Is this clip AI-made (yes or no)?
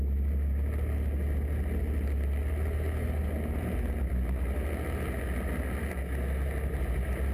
no